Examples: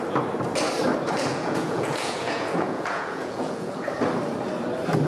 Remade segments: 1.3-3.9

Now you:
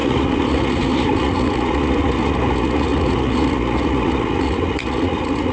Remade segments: 0.0-5.5

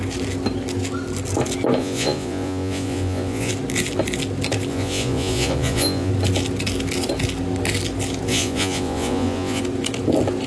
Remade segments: 1.8-3.5; 4.7-6.1; 8.3-9.6

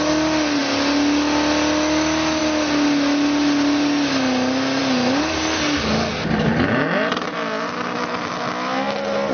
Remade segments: none

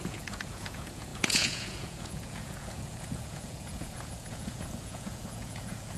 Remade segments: 0.0-6.0

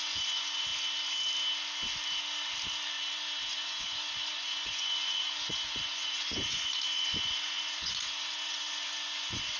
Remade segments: 0.0-0.7; 3.5-9.6